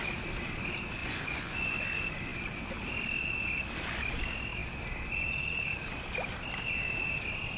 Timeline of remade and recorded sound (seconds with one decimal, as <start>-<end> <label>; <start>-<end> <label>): 0.0-1.0 recorded; 1.0-1.8 remade; 1.8-7.6 recorded